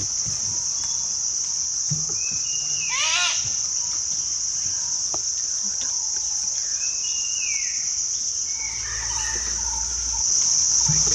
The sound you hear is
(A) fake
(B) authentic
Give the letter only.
B